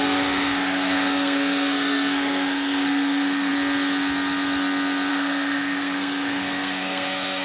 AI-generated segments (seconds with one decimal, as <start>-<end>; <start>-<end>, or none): 0.0-3.5; 5.1-7.4